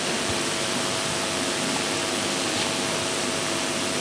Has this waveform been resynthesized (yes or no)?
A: no